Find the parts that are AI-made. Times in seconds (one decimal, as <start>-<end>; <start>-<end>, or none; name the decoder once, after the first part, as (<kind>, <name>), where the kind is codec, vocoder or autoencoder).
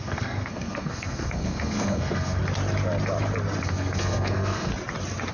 0.0-2.4 (codec, SNAC); 3.6-4.7